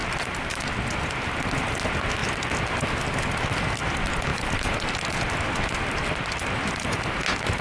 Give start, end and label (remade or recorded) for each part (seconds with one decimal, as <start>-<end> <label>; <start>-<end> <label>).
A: 0.0-0.6 remade; 0.6-4.3 recorded; 4.3-4.9 remade; 4.9-7.6 recorded